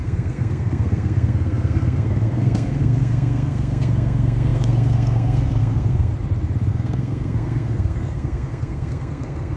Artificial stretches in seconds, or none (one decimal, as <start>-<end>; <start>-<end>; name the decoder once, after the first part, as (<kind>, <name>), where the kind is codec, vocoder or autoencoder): 0.0-6.1 (codec, SNAC); 6.7-9.6